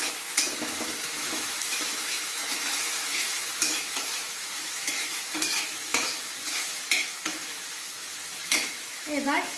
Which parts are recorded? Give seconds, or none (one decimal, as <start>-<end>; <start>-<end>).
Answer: none